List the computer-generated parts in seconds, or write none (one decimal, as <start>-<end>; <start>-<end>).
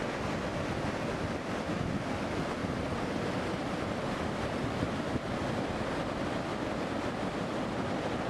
none